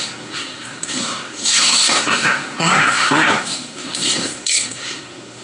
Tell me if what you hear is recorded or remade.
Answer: remade